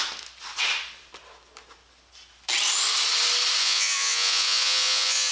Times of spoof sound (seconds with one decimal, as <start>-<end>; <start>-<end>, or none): 3.6-5.3